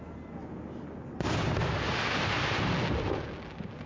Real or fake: real